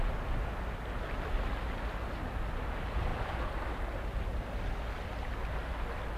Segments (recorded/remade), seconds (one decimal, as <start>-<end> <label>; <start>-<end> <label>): 0.0-6.2 recorded